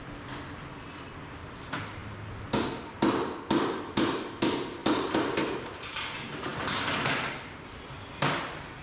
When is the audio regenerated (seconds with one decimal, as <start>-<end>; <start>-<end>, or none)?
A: none